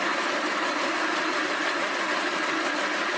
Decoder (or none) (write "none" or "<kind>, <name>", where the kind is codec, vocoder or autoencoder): vocoder, BigVGAN v2